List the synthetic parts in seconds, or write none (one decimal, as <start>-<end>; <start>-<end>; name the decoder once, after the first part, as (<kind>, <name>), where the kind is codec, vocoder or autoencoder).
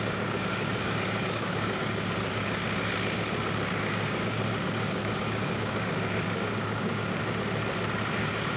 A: 0.0-2.6 (codec, DAC); 3.8-7.2; 8.1-8.6